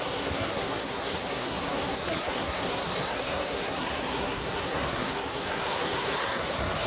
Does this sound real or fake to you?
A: fake